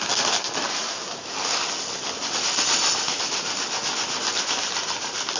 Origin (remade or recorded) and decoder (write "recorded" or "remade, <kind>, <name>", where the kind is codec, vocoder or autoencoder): recorded